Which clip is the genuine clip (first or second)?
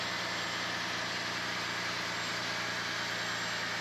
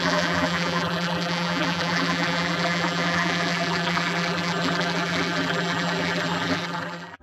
first